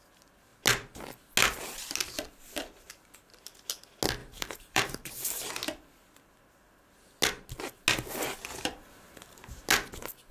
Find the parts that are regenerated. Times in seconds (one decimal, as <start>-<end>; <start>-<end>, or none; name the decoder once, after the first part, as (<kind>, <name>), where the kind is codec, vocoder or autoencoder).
4.2-5.5 (vocoder, BigVGAN v2); 8.5-9.7